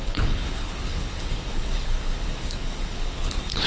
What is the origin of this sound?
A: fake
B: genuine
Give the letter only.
A